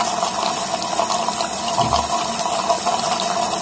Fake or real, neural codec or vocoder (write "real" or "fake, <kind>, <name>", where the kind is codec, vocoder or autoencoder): real